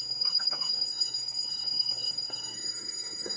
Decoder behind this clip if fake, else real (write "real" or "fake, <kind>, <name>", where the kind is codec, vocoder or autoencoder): fake, codec, SNAC